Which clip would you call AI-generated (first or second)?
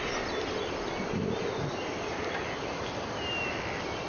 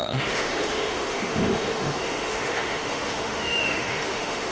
second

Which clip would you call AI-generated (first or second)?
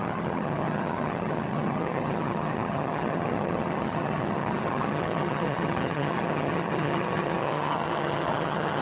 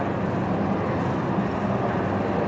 first